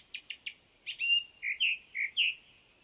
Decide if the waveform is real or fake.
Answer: real